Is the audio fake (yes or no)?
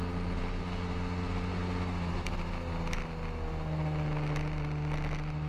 no